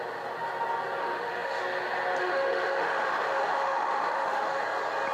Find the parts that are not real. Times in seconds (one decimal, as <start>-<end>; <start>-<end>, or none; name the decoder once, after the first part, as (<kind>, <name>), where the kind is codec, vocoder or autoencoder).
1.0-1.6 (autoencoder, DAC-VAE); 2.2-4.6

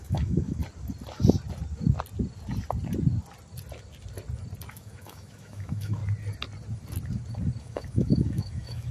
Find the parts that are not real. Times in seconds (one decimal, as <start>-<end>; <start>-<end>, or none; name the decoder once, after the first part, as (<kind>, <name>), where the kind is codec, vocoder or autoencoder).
0.0-0.6 (autoencoder, DAC-VAE); 4.7-6.0; 7.6-8.9

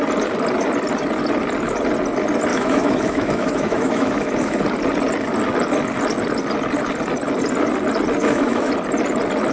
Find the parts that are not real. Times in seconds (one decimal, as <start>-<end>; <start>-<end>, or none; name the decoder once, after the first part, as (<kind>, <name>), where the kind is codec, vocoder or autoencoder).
2.5-4.6 (autoencoder, DAC-VAE); 8.2-8.7

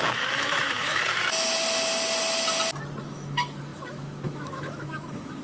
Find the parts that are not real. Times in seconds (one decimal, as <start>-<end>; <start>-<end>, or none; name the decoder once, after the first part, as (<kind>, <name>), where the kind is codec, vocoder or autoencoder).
0.0-1.0 (autoencoder, DAC-VAE); 3.0-5.4

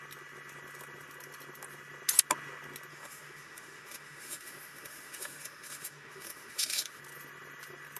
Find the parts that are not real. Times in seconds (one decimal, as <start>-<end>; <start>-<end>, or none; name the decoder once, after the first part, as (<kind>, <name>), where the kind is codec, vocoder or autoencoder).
2.9-7.0 (autoencoder, DAC-VAE)

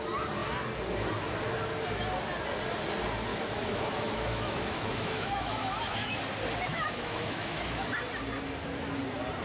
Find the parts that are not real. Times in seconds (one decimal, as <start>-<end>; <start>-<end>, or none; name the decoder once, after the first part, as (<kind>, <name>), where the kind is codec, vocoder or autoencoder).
3.3-6.2 (autoencoder, DAC-VAE); 6.7-7.9

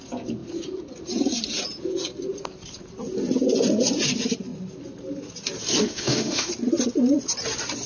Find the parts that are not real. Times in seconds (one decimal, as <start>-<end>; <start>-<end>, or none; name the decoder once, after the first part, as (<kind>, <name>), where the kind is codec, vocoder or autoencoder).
5.8-6.5 (autoencoder, DAC-VAE)